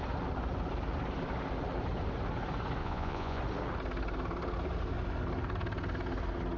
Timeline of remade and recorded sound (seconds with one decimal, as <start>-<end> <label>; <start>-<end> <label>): 0.0-2.8 recorded; 2.8-3.4 remade; 3.4-6.6 recorded